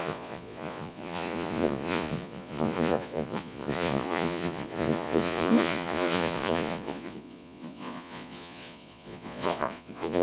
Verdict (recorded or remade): remade